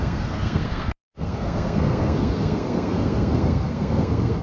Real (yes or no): no